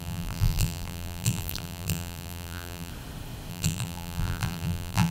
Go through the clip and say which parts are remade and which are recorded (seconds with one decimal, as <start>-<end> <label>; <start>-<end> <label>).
0.0-2.9 remade; 2.9-3.5 recorded; 3.5-5.1 remade